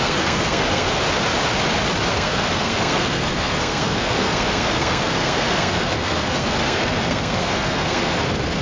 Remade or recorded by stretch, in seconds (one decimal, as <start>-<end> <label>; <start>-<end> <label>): 0.0-1.0 remade; 1.0-2.1 recorded; 2.1-8.6 remade